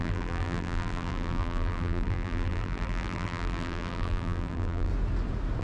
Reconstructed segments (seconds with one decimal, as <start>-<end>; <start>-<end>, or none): 0.0-4.9